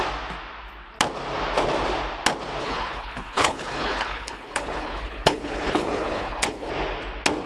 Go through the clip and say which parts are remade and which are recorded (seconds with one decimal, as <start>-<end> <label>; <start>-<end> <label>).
0.0-2.6 recorded; 2.6-6.7 remade; 6.7-7.5 recorded